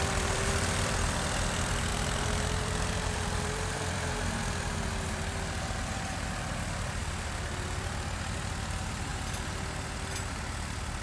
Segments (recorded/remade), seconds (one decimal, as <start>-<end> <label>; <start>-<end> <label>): 0.0-9.1 remade; 9.1-11.0 recorded